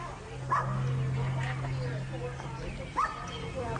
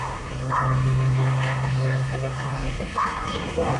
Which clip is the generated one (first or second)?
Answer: second